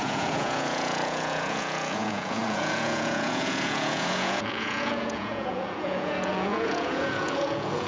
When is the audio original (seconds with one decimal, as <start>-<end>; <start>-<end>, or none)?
none